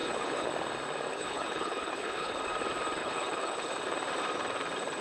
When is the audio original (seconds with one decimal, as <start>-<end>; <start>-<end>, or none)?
0.5-1.1; 2.4-3.0; 3.7-5.0